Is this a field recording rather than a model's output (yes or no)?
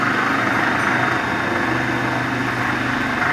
yes